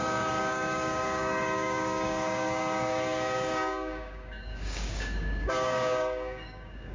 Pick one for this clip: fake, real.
fake